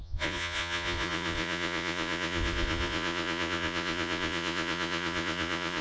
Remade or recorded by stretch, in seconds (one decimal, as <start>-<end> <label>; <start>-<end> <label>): 0.0-5.8 remade